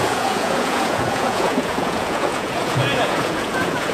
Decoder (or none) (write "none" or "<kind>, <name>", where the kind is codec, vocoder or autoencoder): vocoder, Vocos